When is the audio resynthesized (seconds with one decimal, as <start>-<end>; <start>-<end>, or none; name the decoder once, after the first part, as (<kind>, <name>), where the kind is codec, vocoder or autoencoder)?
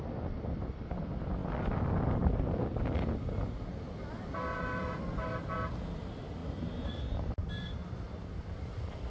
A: 0.0-1.4 (vocoder, BigVGAN v2); 4.1-9.1